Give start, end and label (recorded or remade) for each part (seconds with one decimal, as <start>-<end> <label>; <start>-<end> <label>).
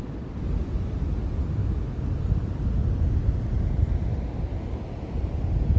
0.0-5.8 recorded